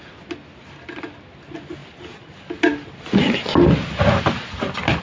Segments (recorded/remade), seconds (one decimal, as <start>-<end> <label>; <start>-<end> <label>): 0.0-5.0 recorded